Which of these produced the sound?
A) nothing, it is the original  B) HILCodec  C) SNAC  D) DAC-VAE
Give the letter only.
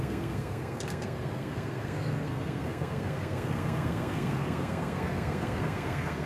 C